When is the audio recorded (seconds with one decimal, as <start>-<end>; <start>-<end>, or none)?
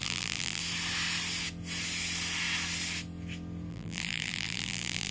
0.6-3.7